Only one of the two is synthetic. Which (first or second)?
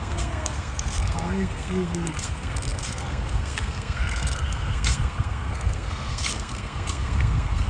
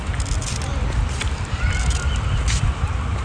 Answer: first